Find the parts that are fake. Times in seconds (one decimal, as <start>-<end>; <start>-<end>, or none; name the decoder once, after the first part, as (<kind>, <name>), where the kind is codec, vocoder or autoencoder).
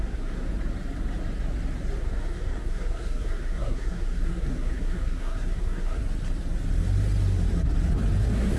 0.0-0.5 (codec, SNAC); 2.0-6.0; 8.2-8.6